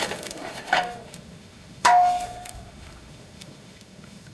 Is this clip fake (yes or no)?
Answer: yes